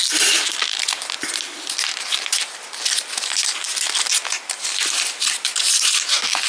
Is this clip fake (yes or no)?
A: no